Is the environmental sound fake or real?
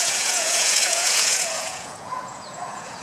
fake